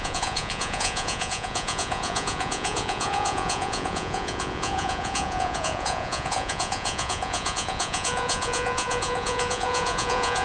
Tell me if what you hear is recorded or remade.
remade